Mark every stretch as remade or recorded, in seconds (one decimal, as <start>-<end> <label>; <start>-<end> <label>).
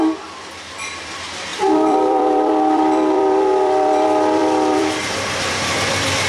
0.0-6.3 remade